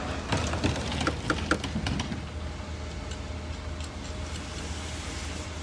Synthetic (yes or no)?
no